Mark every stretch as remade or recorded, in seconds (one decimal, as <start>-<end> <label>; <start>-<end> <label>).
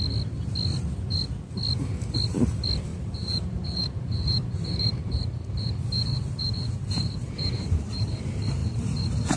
0.0-2.9 recorded; 2.9-8.2 remade; 8.2-8.6 recorded; 8.6-9.4 remade